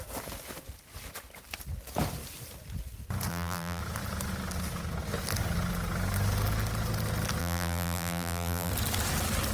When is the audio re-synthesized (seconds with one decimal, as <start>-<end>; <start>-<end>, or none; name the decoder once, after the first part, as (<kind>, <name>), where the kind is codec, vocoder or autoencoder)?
3.3-3.8 (vocoder, BigVGAN v2); 7.4-8.7

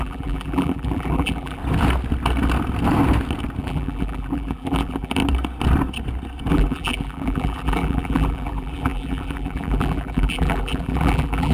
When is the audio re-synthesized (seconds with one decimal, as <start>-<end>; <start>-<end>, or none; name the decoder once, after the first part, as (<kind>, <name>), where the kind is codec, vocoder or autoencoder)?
0.0-1.6 (vocoder, BigVGAN v2); 3.6-5.2; 6.5-11.5

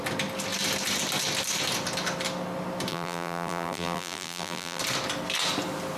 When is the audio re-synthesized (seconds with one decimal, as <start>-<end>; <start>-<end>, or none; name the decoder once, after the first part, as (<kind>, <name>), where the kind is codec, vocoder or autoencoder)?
2.9-4.8 (vocoder, BigVGAN v2)